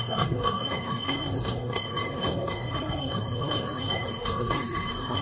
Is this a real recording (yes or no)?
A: no